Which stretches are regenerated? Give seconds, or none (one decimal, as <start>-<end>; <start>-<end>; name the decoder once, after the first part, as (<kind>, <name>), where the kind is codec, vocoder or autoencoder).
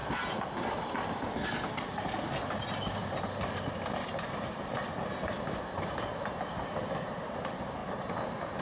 none